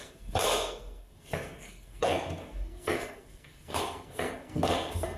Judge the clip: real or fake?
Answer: fake